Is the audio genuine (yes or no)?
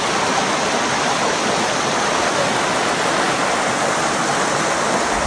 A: yes